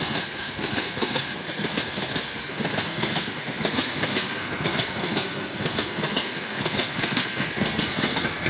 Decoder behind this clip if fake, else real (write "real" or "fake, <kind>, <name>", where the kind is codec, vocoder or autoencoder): fake, codec, SNAC